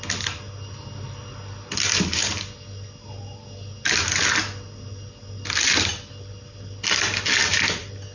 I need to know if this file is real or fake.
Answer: real